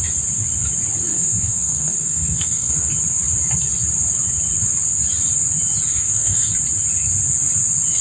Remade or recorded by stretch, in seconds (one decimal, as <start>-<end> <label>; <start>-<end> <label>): 0.0-1.1 recorded; 1.1-2.9 remade; 2.9-5.9 recorded; 5.9-6.5 remade; 6.5-8.0 recorded